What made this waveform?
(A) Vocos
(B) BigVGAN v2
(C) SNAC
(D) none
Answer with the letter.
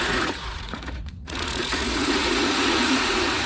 A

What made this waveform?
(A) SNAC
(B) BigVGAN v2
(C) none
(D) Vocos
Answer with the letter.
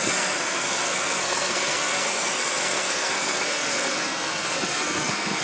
A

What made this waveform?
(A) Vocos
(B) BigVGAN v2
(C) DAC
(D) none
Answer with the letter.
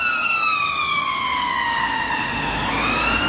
C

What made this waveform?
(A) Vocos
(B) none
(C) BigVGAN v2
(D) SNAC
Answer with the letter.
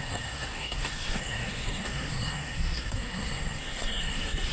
D